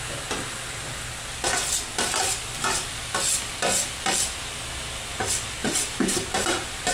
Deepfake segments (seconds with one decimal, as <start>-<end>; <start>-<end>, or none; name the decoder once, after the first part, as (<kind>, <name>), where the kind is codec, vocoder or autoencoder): 5.6-6.9 (vocoder, BigVGAN v2)